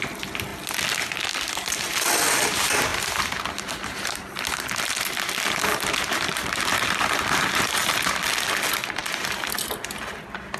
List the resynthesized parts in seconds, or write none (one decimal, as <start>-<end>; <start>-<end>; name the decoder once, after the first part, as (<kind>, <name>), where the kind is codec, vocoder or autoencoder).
7.8-8.3 (vocoder, BigVGAN v2); 9.0-9.6